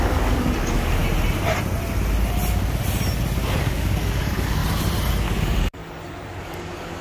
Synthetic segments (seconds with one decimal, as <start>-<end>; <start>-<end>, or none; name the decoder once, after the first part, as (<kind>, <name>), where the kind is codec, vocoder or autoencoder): 0.0-1.0 (codec, DAC); 3.6-4.6; 5.2-5.8; 6.4-7.0